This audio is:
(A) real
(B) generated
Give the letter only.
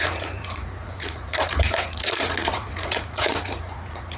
B